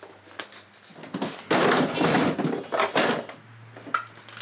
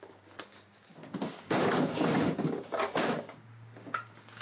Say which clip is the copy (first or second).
second